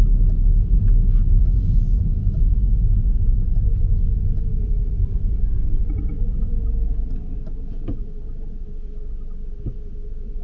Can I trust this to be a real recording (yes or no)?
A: yes